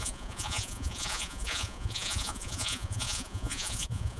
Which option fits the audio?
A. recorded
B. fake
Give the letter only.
B